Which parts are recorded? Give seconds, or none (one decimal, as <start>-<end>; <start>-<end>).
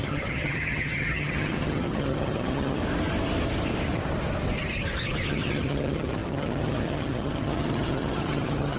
2.8-5.3